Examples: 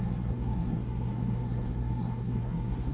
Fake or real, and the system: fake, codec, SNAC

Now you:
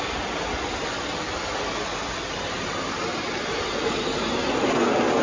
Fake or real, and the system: real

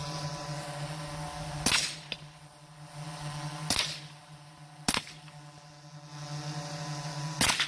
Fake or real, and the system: real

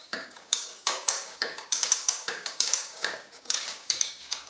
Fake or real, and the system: fake, codec, DAC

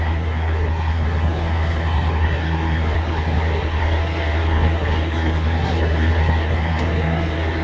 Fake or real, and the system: fake, codec, SNAC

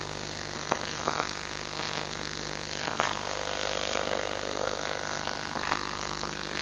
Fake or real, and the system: fake, codec, SNAC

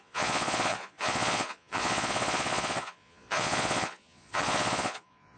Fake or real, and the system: fake, vocoder, Vocos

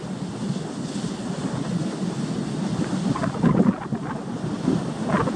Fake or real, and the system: real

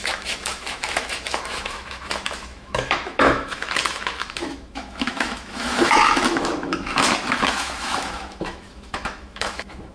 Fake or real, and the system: fake, autoencoder, DAC-VAE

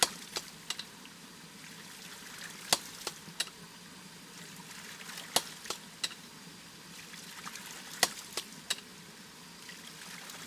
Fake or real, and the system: real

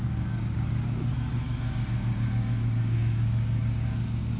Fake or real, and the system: fake, codec, DAC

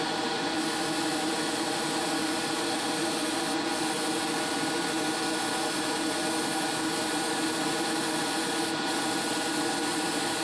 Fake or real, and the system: real